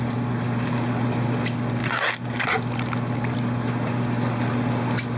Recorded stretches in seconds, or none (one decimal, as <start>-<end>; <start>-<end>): 0.0-5.2